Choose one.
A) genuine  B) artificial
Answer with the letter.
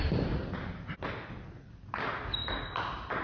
A